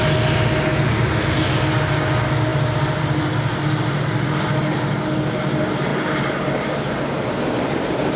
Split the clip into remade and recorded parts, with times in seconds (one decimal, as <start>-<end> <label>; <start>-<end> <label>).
0.0-2.5 recorded; 2.5-4.6 remade; 4.6-5.9 recorded; 5.9-6.5 remade; 6.5-8.2 recorded